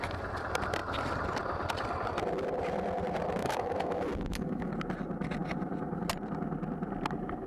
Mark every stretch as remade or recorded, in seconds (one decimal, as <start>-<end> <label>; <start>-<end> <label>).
0.0-3.4 recorded; 3.4-4.7 remade; 4.7-7.5 recorded